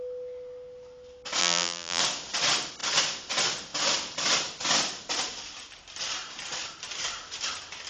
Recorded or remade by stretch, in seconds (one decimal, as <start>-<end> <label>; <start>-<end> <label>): 0.0-1.4 recorded; 1.4-2.0 remade; 2.0-7.9 recorded